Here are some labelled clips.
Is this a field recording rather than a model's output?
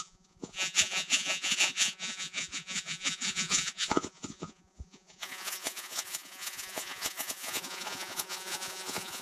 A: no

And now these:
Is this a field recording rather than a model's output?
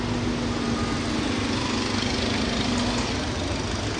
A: yes